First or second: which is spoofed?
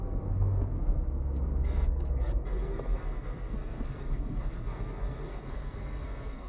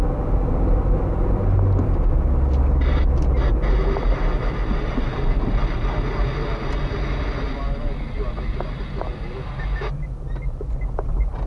first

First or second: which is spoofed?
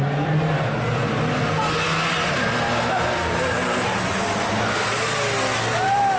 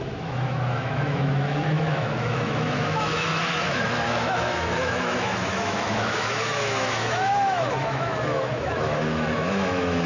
second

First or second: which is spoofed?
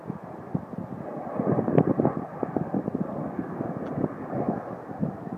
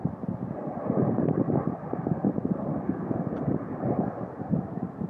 second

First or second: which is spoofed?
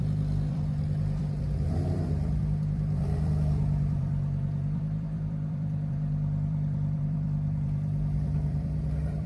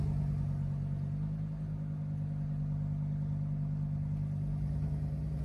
first